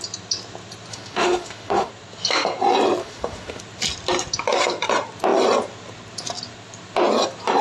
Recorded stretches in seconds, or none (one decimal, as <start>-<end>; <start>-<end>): 0.0-0.9; 1.9-3.0; 3.6-7.6